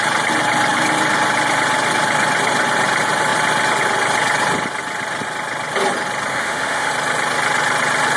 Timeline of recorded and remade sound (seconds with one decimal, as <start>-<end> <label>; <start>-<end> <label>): 0.0-6.3 recorded; 6.3-6.9 remade; 6.9-8.2 recorded